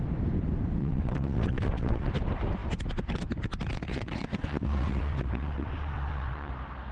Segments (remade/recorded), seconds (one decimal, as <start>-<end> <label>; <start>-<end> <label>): 0.0-0.8 recorded; 0.8-2.1 remade; 2.1-3.9 recorded; 3.9-6.5 remade; 6.5-6.9 recorded